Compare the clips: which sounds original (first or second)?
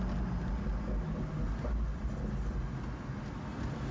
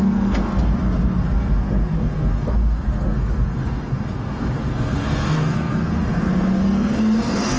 first